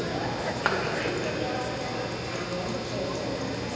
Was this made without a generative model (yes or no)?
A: yes